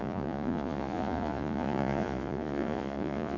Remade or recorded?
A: remade